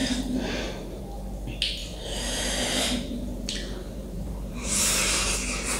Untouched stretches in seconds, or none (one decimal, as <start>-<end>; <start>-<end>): 1.0-1.8; 5.3-5.8